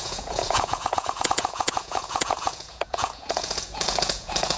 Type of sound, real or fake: fake